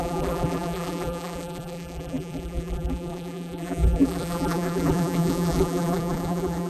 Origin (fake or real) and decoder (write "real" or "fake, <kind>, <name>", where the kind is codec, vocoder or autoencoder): fake, vocoder, BigVGAN v2